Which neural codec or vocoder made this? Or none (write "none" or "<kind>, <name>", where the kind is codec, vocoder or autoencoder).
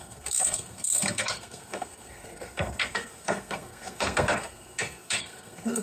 codec, SNAC